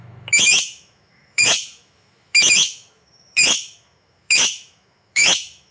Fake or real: fake